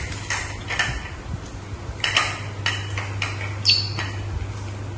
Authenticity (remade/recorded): recorded